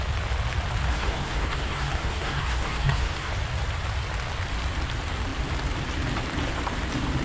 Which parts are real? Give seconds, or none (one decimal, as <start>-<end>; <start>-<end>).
0.0-0.9; 3.3-7.2